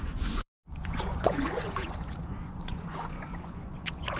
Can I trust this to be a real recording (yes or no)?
no